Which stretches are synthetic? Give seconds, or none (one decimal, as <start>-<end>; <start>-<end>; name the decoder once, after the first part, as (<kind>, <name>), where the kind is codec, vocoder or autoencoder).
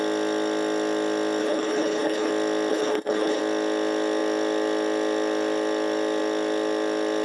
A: 1.4-2.3 (codec, HILCodec); 2.7-3.4